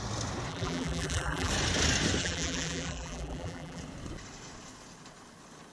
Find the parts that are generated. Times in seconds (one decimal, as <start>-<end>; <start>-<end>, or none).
0.5-1.5; 2.2-3.8